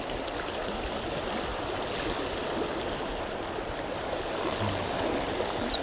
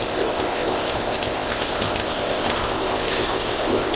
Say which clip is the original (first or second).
first